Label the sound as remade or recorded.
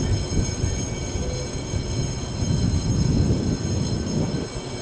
recorded